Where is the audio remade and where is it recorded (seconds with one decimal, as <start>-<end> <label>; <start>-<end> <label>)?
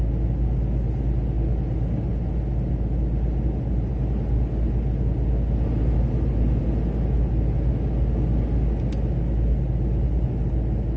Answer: 0.0-11.0 recorded